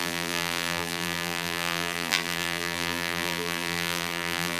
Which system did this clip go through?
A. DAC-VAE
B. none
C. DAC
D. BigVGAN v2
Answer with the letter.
D